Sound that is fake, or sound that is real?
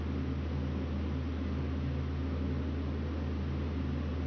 real